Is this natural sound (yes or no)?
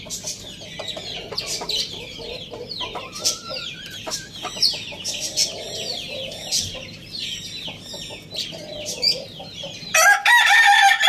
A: yes